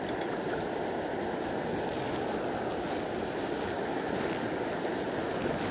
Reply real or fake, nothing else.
real